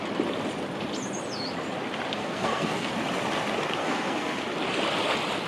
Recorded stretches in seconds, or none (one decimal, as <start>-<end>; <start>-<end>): 0.0-2.2; 2.9-3.8; 4.4-5.5